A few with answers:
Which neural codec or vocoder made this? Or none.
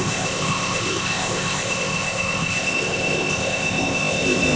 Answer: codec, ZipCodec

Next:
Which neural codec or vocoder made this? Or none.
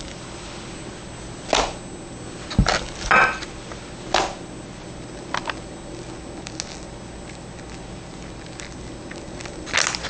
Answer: none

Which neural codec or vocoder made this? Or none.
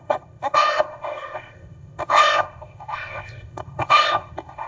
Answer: codec, ZipCodec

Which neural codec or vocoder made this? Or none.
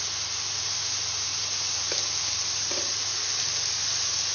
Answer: none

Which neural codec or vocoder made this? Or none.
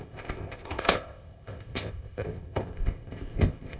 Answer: codec, ZipCodec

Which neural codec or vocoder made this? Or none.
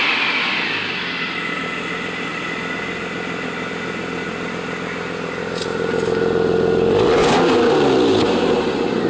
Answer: none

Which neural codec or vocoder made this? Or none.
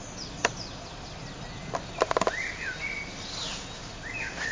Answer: none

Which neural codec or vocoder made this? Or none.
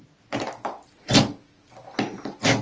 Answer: none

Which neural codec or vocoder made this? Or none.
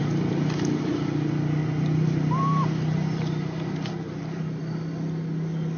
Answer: none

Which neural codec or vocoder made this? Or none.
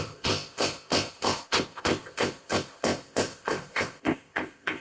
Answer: codec, ZipCodec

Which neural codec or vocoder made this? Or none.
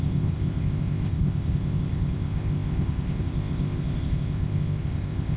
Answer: codec, ZipCodec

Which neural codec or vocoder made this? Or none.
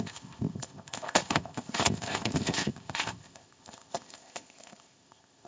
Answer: codec, ZipCodec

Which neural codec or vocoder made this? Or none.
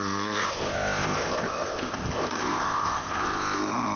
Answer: codec, ZipCodec